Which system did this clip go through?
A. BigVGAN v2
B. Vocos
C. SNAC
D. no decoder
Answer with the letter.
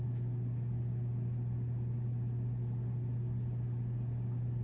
D